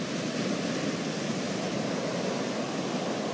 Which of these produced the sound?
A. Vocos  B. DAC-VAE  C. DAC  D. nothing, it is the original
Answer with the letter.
D